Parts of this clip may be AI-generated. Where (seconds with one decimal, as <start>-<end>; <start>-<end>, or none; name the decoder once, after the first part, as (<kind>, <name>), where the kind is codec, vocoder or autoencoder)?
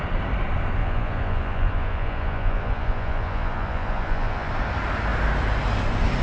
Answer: 0.8-4.5 (vocoder, Vocos)